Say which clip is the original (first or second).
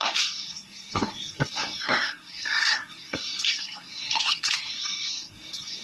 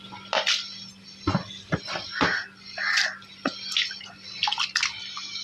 second